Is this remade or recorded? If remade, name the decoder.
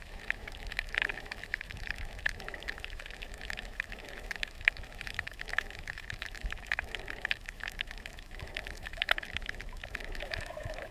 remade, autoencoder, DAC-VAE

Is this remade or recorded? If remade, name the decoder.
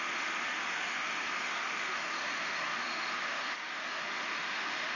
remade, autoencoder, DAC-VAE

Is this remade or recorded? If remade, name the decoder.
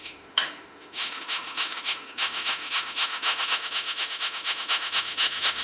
remade, autoencoder, DAC-VAE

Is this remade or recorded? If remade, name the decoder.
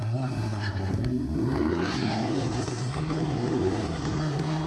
remade, codec, SNAC